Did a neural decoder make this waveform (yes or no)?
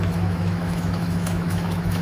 yes